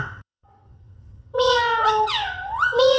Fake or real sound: fake